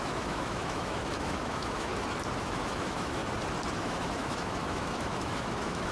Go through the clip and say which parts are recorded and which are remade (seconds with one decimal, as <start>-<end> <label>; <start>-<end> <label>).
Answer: 0.0-1.9 remade; 1.9-2.4 recorded; 2.4-3.2 remade; 3.2-3.8 recorded; 3.8-5.9 remade